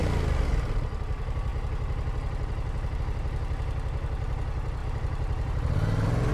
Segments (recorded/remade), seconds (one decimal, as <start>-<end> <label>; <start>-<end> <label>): 0.0-4.8 recorded; 4.8-6.3 remade